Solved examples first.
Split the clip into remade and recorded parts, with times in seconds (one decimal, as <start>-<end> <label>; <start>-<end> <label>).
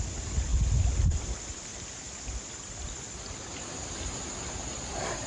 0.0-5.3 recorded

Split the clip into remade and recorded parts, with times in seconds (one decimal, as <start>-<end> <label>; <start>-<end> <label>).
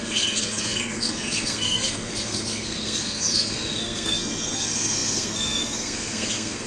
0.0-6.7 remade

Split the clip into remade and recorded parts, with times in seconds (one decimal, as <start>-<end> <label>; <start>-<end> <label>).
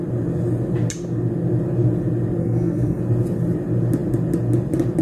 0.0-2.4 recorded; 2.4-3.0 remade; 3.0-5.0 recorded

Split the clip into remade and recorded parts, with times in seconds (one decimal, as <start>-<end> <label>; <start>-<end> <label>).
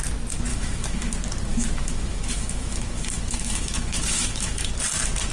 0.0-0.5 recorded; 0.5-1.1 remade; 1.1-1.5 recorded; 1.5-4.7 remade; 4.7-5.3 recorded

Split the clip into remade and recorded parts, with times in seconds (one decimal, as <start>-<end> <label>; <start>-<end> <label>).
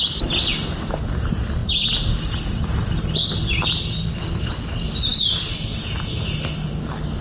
0.0-7.2 recorded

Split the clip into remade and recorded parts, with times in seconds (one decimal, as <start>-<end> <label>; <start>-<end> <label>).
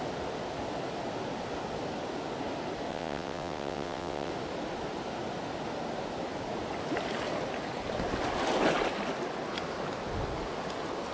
0.0-2.9 recorded; 2.9-4.3 remade; 4.3-11.1 recorded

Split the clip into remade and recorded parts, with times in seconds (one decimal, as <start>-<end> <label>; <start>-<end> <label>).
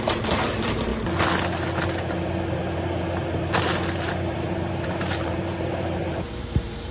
0.0-0.9 remade; 0.9-4.1 recorded; 4.1-6.9 remade